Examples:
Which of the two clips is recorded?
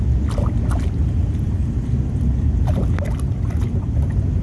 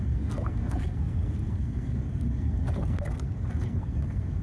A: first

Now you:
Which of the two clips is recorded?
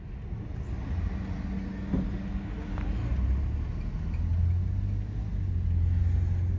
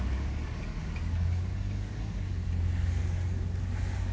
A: first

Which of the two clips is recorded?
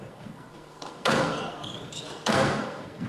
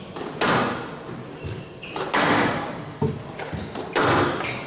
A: second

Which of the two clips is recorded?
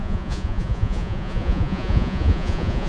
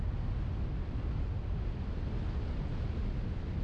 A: second